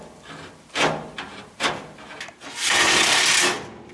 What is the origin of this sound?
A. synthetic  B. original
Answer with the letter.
B